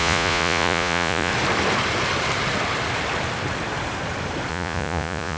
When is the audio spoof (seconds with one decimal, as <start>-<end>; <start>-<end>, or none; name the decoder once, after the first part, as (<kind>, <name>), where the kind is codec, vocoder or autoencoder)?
0.0-1.3 (vocoder, Vocos); 4.5-5.4